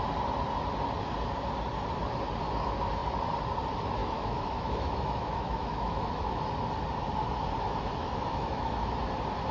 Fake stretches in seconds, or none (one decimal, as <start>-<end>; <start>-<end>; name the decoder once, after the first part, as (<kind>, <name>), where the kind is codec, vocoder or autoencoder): 4.0-6.4 (autoencoder, DAC-VAE); 8.0-8.8